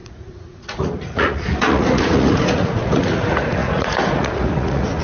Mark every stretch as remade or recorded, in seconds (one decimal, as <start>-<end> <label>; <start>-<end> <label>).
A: 0.0-5.0 remade